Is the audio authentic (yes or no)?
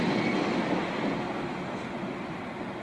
yes